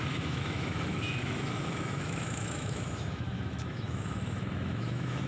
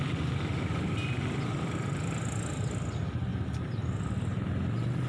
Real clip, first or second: second